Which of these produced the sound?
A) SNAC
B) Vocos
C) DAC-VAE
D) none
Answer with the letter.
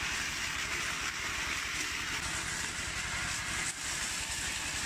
D